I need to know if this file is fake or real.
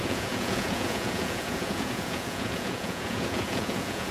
fake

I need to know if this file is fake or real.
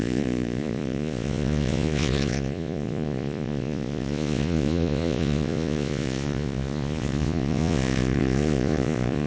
fake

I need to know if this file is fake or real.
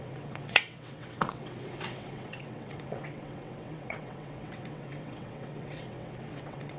fake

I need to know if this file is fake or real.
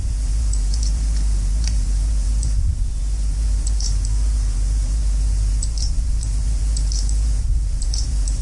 fake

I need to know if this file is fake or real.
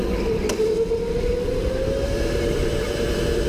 real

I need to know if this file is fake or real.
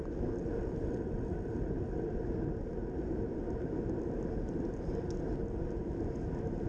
real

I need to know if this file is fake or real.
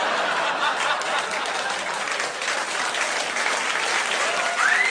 real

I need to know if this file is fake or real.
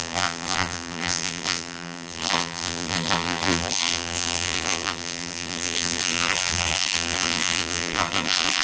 fake